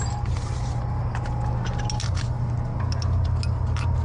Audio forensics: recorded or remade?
recorded